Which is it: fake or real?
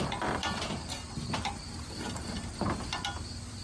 fake